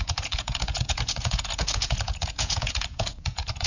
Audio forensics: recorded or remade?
remade